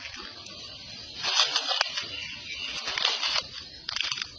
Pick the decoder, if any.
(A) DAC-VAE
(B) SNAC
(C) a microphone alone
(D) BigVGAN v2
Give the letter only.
C